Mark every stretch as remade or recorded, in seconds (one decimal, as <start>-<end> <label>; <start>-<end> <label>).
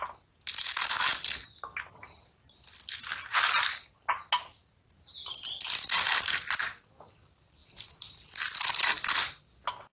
0.0-7.6 recorded; 7.6-8.6 remade; 8.6-9.9 recorded